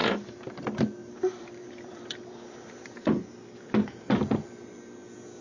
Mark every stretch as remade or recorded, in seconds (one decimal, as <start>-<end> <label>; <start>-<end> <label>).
0.0-0.6 remade; 0.6-1.0 recorded; 1.0-4.2 remade; 4.2-5.4 recorded